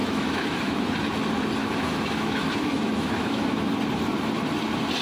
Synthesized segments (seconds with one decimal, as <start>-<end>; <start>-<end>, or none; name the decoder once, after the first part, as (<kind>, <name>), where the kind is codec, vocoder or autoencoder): 0.0-0.9 (autoencoder, DAC-VAE); 1.6-3.7